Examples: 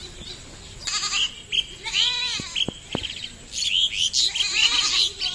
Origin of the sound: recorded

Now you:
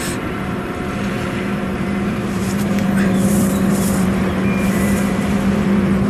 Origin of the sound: remade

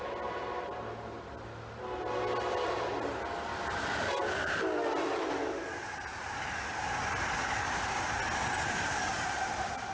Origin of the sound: recorded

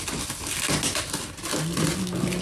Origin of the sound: recorded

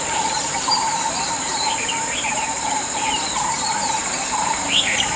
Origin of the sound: remade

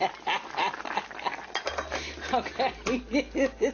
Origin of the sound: recorded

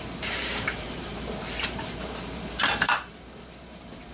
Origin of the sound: remade